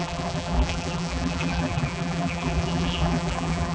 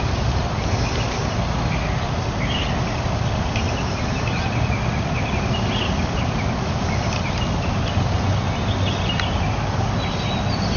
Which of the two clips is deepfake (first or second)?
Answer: first